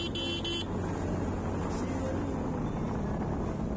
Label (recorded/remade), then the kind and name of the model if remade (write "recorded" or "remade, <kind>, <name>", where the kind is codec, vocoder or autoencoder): recorded